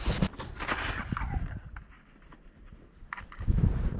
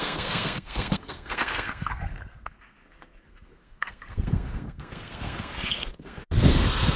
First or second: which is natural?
first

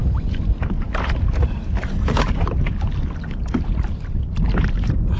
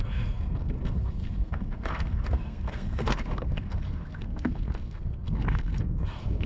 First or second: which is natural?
first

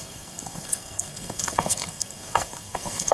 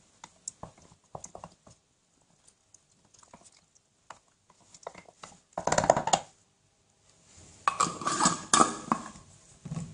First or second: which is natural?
second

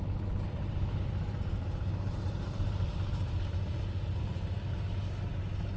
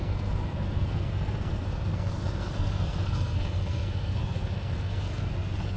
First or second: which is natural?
first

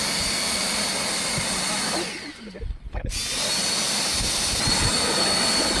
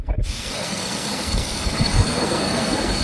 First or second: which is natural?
first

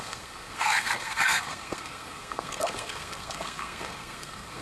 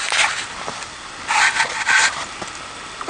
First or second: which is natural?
second